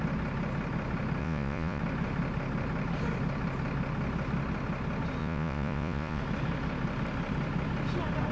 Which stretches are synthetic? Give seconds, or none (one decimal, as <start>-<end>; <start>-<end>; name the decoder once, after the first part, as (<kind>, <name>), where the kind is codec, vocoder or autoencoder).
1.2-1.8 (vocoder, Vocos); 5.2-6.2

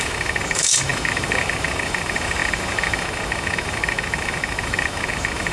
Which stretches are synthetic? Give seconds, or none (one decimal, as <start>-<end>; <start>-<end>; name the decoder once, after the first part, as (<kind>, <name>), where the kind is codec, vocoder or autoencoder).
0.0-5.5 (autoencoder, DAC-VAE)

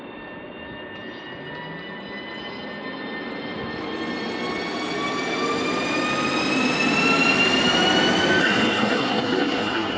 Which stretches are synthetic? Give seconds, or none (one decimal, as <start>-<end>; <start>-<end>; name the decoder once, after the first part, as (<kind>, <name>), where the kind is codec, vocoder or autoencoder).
8.4-10.0 (codec, SNAC)